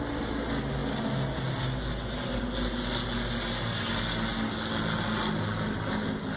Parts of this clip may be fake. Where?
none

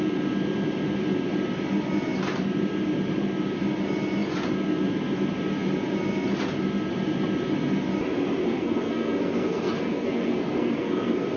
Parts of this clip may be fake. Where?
8.4-11.4 (codec, SNAC)

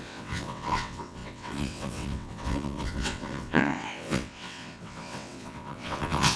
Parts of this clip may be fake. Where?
0.0-6.4 (vocoder, WaveNeXt)

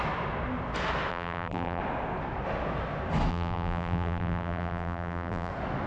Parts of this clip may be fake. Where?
1.1-1.8 (vocoder, BigVGAN v2); 3.3-5.5

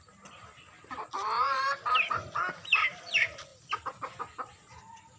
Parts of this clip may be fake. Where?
0.0-3.5 (vocoder, BigVGAN v2); 4.8-5.2

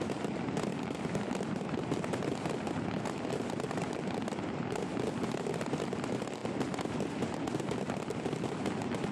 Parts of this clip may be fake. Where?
none

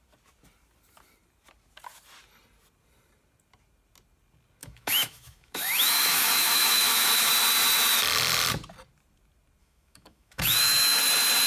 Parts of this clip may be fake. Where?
4.6-7.3 (autoencoder, DAC-VAE); 9.6-11.0

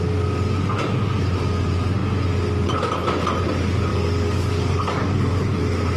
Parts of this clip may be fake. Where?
3.9-5.6 (codec, DAC)